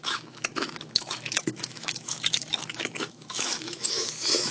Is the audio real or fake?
fake